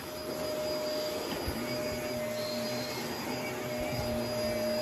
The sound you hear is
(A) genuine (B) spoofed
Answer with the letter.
A